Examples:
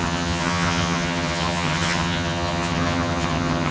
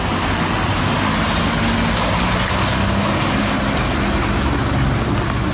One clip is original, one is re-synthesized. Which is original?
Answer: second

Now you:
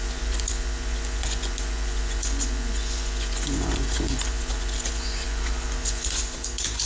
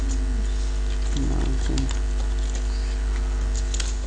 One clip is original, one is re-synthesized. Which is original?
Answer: second